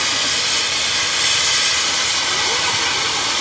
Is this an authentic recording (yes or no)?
yes